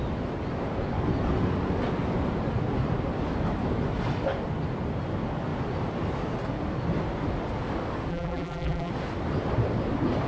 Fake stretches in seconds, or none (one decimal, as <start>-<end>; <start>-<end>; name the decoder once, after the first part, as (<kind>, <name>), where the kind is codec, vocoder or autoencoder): 8.1-8.9 (vocoder, BigVGAN v2)